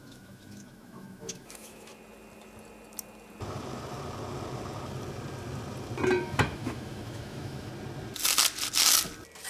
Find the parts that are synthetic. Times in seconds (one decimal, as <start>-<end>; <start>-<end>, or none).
0.0-1.9; 6.2-7.7